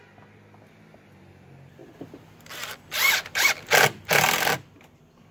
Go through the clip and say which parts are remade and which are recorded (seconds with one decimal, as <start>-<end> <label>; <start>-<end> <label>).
0.0-5.3 recorded